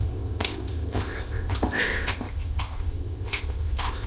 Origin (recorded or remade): remade